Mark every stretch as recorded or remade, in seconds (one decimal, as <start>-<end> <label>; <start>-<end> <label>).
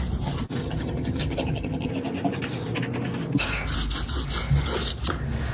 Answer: 0.0-0.6 recorded; 0.6-1.9 remade; 1.9-5.5 recorded